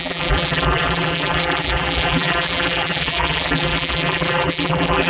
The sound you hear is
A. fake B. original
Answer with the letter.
A